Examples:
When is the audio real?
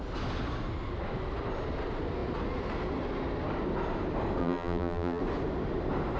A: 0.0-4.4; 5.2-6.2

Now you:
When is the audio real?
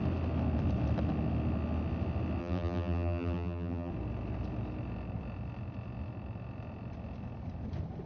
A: 0.0-2.4; 3.9-8.1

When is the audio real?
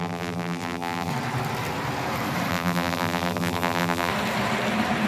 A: 1.1-2.5; 4.1-5.1